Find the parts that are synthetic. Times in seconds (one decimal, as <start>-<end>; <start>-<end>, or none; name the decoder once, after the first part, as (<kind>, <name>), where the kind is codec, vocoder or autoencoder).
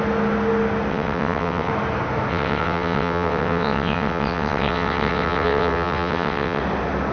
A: 0.9-1.7 (vocoder, WaveNeXt); 2.3-6.6